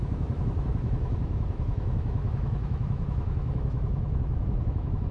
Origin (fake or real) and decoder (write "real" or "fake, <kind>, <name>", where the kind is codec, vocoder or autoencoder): fake, autoencoder, DAC-VAE